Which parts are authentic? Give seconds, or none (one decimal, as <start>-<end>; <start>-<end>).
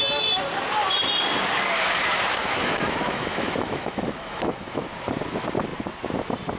0.0-2.4; 4.8-6.6